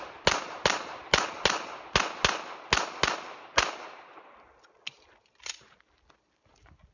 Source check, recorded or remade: recorded